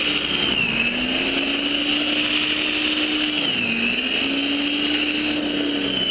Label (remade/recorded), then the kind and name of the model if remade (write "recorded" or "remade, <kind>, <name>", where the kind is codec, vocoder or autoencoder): recorded